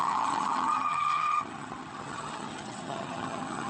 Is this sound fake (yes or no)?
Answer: yes